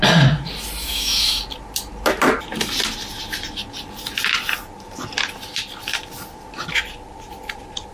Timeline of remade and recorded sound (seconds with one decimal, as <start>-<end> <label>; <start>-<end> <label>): 0.0-0.8 recorded; 0.8-1.4 remade; 1.4-7.9 recorded